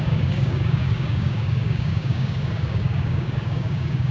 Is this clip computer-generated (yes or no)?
yes